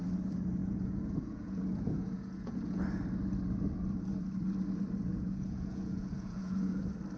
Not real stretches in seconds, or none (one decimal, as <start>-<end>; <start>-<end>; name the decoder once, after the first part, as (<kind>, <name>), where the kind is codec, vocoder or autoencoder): 0.6-2.8 (vocoder, Vocos); 5.1-6.8